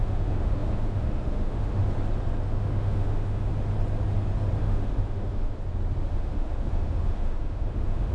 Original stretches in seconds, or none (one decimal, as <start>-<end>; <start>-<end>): 1.8-2.4; 3.5-4.6; 5.5-6.1